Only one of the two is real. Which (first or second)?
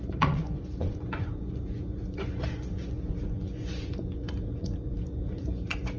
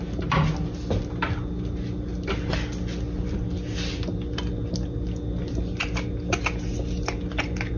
second